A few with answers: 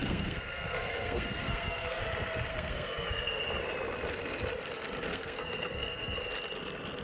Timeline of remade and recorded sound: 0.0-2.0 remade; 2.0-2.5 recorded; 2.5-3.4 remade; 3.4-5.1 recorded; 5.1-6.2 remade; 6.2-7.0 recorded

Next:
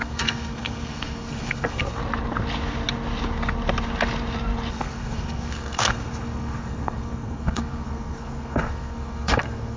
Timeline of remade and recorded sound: 0.0-2.0 remade; 2.0-4.7 recorded; 4.7-9.8 remade

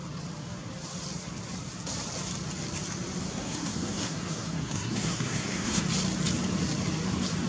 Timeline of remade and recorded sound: 0.0-3.2 recorded; 3.2-5.8 remade; 5.8-7.5 recorded

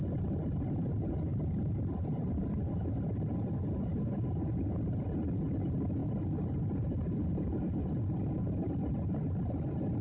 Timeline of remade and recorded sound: 0.0-10.0 recorded

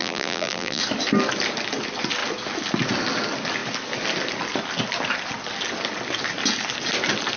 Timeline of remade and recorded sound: 0.0-0.8 remade; 0.8-7.4 recorded

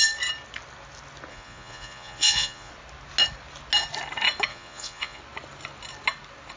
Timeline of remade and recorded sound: 0.0-1.3 recorded; 1.3-2.7 remade; 2.7-4.5 recorded; 4.5-5.2 remade; 5.2-6.6 recorded

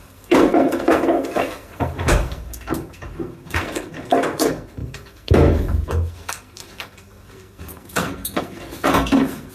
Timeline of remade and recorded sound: 0.0-9.5 remade

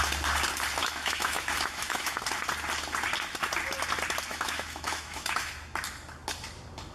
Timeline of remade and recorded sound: 0.0-0.8 recorded; 0.8-2.2 remade; 2.2-4.3 recorded; 4.3-5.5 remade; 5.5-6.9 recorded